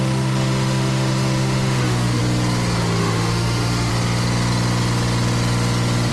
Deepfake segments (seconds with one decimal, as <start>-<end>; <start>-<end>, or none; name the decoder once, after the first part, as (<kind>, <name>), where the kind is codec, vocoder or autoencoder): 0.0-2.2 (autoencoder, DAC-VAE); 3.0-3.9